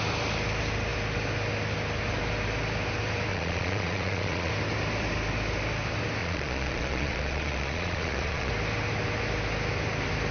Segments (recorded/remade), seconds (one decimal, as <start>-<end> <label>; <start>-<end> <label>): 0.0-3.3 recorded; 3.3-4.5 remade; 4.5-6.2 recorded; 6.2-8.5 remade; 8.5-10.3 recorded